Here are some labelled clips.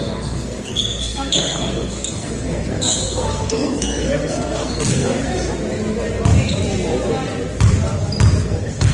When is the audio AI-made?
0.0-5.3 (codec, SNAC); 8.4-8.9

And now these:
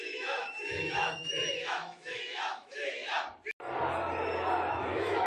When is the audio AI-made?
0.0-3.0 (autoencoder, DAC-VAE); 4.7-5.3